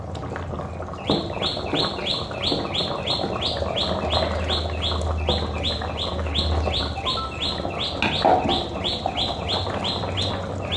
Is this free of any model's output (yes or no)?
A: yes